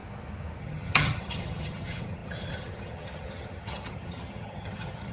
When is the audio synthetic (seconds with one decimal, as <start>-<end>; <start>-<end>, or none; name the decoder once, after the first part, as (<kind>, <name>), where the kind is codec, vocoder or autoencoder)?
0.6-5.1 (vocoder, HiFi-GAN)